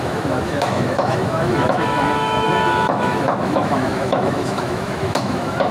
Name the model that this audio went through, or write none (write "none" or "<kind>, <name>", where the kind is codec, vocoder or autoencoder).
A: autoencoder, DAC-VAE